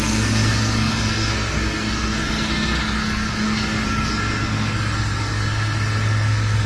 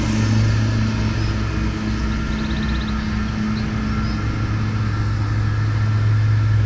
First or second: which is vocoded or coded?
first